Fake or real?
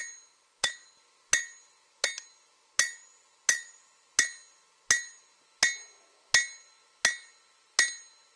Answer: real